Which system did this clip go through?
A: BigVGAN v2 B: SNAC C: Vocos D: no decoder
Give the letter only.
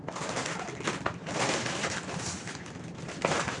D